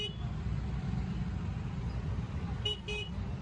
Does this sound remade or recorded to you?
recorded